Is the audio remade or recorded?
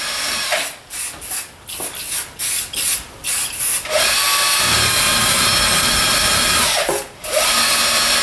recorded